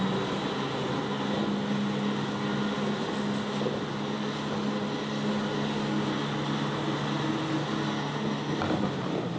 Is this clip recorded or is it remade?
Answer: recorded